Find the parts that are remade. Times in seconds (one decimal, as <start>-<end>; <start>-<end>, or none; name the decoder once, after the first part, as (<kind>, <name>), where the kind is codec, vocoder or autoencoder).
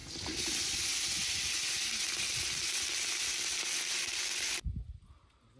none